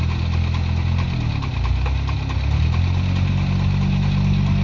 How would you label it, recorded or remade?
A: recorded